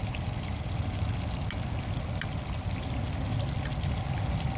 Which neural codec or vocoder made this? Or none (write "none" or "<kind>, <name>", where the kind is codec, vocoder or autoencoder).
none